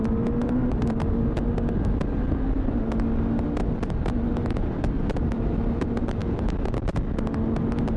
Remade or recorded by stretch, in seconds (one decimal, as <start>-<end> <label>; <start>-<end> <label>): 0.0-8.0 recorded